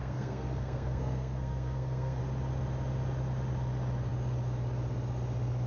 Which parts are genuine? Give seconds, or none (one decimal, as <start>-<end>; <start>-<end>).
2.2-5.7